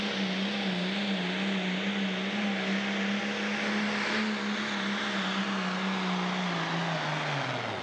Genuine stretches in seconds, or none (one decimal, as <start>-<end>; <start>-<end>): 0.0-7.8